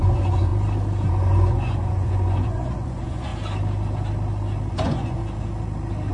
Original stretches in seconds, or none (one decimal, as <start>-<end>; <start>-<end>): 0.5-1.1; 3.3-4.7; 5.2-6.1

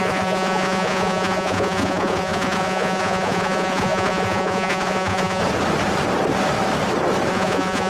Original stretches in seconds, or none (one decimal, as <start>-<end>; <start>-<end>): 5.4-7.3

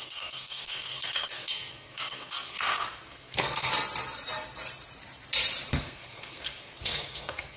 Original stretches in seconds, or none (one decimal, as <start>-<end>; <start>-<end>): 3.7-5.7

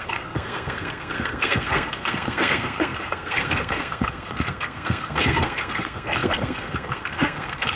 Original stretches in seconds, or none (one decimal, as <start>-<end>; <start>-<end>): none

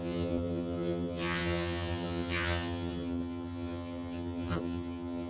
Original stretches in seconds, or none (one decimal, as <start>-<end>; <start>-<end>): none